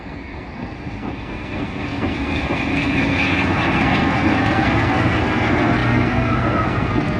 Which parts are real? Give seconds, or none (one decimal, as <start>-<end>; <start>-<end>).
none